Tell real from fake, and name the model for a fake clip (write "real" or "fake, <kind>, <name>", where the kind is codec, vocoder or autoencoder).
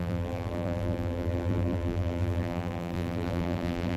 fake, vocoder, BigVGAN v2